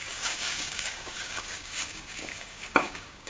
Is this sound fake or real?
fake